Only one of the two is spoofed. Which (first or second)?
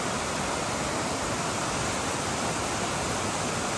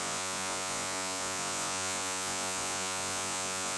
second